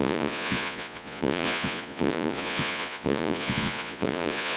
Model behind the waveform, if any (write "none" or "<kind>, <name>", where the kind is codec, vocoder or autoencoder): vocoder, Vocos